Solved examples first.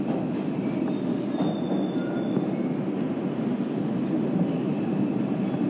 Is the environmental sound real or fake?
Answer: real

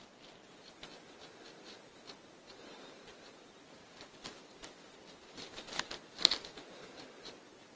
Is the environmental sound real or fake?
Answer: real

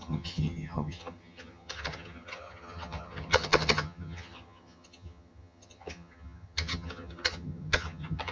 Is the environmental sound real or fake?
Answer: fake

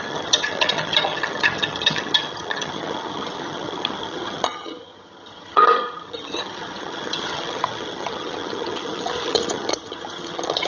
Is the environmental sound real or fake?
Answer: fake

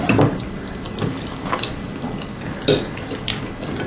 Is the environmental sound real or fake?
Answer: real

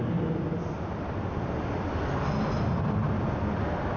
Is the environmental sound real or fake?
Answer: real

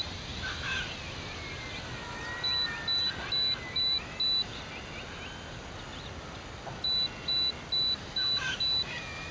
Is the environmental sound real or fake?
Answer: real